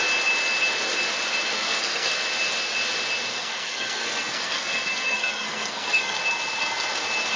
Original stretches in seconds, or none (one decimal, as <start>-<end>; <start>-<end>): 0.0-1.5; 2.1-3.3; 6.2-7.4